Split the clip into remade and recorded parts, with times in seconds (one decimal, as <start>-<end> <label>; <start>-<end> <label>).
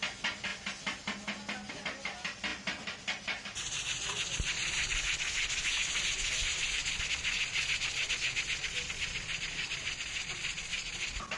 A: 0.0-11.4 recorded